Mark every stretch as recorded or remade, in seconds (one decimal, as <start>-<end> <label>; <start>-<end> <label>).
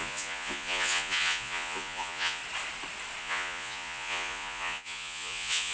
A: 0.0-2.4 remade; 2.4-3.2 recorded; 3.2-5.7 remade